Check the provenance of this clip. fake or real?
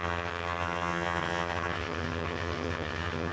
fake